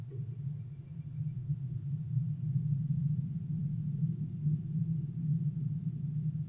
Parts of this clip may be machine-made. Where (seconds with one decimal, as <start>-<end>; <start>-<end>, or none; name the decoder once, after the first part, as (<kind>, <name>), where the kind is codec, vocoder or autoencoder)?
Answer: none

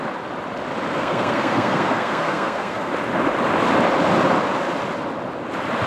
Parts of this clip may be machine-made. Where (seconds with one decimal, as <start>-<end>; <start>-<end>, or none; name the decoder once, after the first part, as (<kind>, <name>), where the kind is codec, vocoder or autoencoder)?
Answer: 0.9-2.9 (codec, SNAC)

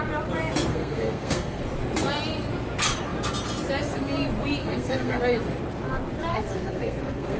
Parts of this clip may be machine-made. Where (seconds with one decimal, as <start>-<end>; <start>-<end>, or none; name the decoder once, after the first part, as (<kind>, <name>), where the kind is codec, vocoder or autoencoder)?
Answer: 0.7-1.6 (codec, SNAC); 4.6-5.2; 6.3-7.4

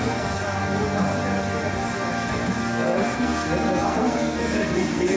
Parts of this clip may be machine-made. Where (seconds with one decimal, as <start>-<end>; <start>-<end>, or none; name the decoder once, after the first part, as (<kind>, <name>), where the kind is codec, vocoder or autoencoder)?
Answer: 0.0-0.4 (codec, SNAC); 2.6-5.2

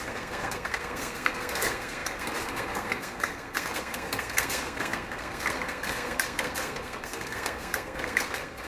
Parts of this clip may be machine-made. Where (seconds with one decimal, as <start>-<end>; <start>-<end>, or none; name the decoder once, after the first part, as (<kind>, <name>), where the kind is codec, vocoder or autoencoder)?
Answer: 0.0-8.7 (codec, SNAC)